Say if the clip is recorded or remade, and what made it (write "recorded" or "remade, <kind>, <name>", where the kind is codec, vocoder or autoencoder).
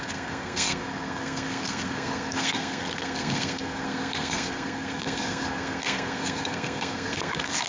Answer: remade, codec, SNAC